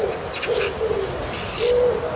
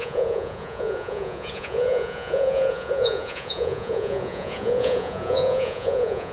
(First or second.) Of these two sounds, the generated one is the second